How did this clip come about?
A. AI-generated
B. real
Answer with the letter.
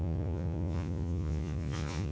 A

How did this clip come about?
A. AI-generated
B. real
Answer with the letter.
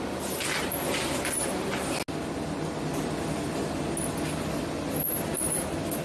B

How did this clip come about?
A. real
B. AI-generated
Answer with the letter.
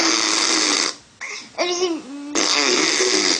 A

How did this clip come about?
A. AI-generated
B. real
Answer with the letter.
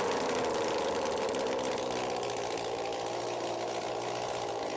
B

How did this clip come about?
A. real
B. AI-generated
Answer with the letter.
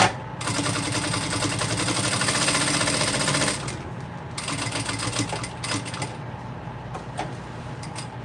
A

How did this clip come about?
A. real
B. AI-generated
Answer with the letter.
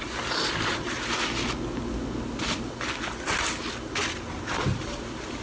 A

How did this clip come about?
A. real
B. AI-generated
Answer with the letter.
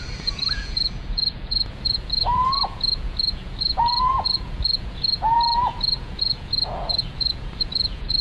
B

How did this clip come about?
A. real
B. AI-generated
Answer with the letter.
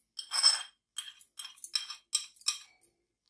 A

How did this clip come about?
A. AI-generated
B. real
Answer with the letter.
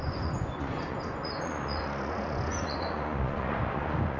A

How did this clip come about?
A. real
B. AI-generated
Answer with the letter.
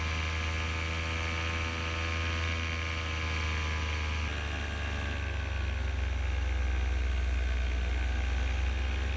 A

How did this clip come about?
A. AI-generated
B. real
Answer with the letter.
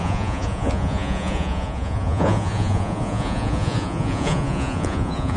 A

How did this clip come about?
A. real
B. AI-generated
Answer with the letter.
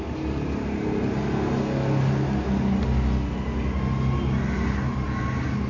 A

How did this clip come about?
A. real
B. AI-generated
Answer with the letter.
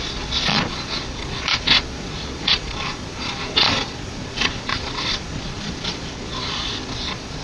B